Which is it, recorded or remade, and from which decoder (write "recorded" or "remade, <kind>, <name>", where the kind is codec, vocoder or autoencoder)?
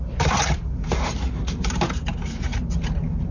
remade, vocoder, BigVGAN v2